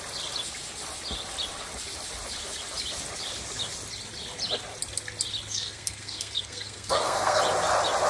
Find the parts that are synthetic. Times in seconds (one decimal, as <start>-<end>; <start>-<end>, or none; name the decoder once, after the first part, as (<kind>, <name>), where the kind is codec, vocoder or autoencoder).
5.5-7.4 (codec, SNAC)